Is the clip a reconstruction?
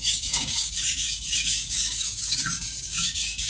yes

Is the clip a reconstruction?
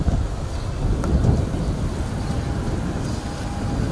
no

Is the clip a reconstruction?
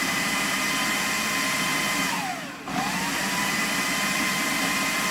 yes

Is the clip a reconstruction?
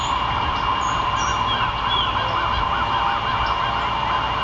no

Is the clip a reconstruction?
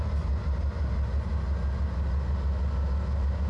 no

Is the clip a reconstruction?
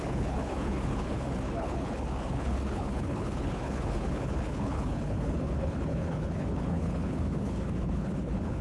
yes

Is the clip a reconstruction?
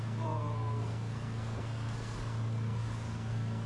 yes